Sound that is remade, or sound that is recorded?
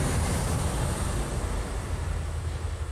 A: recorded